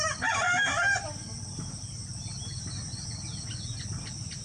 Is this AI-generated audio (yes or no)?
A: no